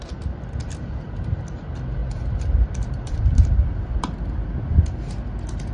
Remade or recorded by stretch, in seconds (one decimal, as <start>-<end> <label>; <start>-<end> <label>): 0.0-2.0 recorded; 2.0-3.8 remade; 3.8-5.7 recorded